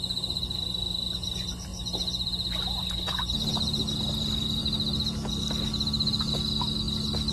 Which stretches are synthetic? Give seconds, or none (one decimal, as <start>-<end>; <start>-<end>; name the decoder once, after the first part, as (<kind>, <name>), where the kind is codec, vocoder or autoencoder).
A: none